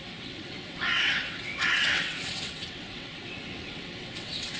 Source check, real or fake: fake